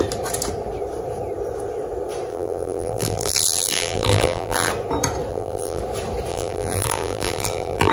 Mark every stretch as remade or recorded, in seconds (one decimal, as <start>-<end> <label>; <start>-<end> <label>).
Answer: 0.0-2.3 recorded; 2.3-4.7 remade; 4.7-5.3 recorded; 5.3-5.8 remade; 5.8-6.3 recorded; 6.3-7.9 remade